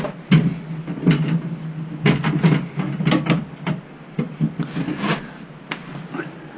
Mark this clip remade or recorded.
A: recorded